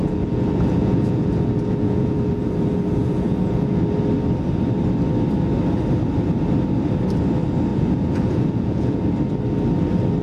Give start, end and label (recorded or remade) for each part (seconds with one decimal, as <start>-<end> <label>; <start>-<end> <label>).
0.0-3.8 remade; 3.8-7.7 recorded; 7.7-9.0 remade; 9.0-10.2 recorded